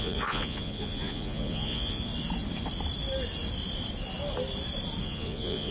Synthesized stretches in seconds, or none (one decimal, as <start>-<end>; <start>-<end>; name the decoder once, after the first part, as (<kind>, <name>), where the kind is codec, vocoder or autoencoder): 0.0-2.1 (vocoder, Vocos); 5.0-5.7